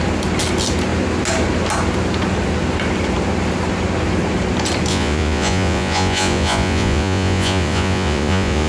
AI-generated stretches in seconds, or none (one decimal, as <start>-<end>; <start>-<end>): 4.9-8.7